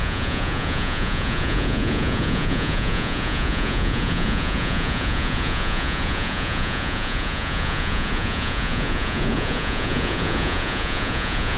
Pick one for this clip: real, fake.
fake